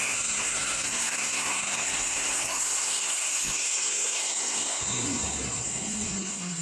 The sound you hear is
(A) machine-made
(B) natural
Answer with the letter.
A